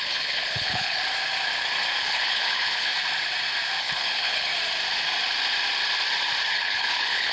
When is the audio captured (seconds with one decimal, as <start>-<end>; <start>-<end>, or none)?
1.0-2.0; 2.9-3.8; 4.5-6.5

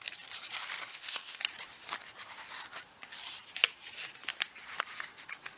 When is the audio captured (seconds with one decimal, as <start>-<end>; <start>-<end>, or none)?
0.0-0.9; 1.4-5.6

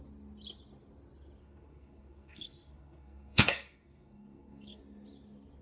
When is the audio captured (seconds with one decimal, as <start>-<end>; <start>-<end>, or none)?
0.0-1.4; 4.8-5.6

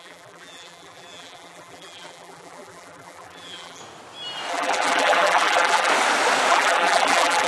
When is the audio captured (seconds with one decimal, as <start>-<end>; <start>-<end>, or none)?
3.8-4.5; 5.9-6.5

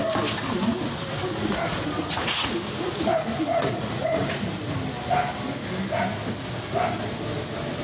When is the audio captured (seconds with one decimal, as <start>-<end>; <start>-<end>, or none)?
0.0-2.0; 2.5-3.4; 4.4-7.8

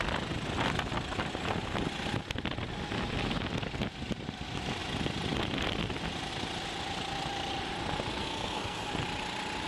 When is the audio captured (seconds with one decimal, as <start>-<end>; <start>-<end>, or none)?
0.0-8.1; 8.9-9.7

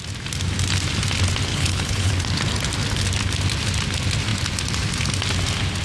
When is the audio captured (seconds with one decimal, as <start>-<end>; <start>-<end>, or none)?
0.0-1.5; 2.1-5.8